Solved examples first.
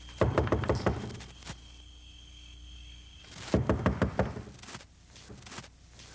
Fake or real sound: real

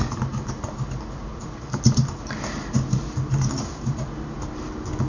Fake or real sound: real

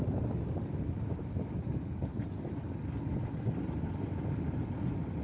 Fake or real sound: real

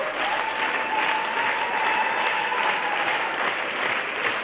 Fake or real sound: real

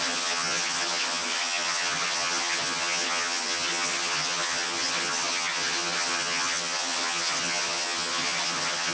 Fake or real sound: fake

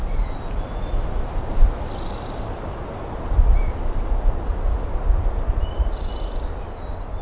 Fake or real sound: real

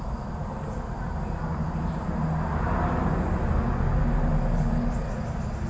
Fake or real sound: real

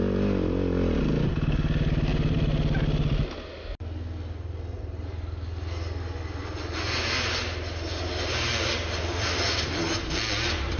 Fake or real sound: real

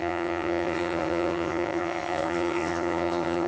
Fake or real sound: fake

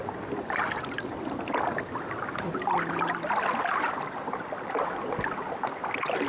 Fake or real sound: real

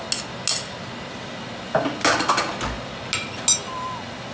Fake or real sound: real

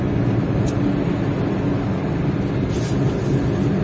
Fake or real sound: real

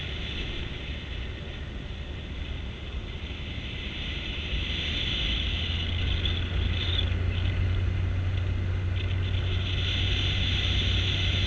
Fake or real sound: real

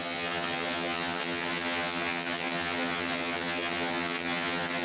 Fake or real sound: fake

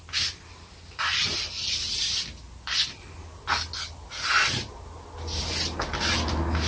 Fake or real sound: real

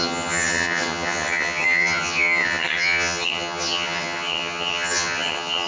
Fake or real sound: fake